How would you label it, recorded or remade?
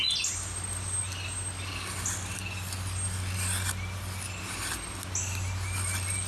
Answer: recorded